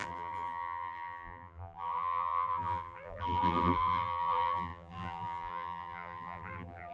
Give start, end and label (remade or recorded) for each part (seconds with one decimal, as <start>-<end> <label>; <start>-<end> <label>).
0.0-6.9 remade